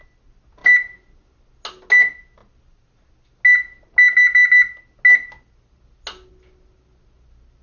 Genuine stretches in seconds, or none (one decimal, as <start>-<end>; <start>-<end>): 0.0-0.6; 1.3-7.6